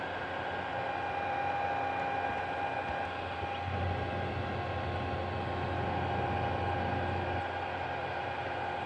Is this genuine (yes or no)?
yes